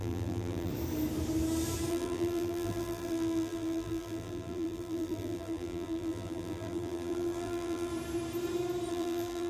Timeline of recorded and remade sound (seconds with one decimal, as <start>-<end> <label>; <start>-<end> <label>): 0.0-0.7 remade; 0.7-1.9 recorded; 1.9-7.9 remade; 7.9-8.9 recorded; 8.9-9.5 remade